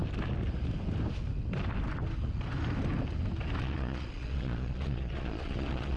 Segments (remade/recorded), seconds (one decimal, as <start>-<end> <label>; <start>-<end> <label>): 0.0-3.6 recorded; 3.6-6.0 remade